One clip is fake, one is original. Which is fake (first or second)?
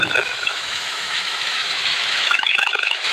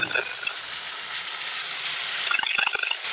first